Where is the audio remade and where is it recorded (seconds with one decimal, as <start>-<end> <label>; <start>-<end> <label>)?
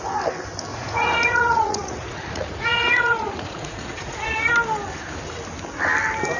0.0-0.7 recorded; 0.7-4.5 remade; 4.5-6.4 recorded